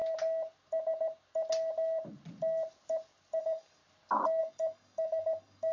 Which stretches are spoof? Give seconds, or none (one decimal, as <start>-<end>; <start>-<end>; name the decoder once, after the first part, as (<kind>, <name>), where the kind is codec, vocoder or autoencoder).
3.4-3.8 (codec, DAC); 4.4-5.7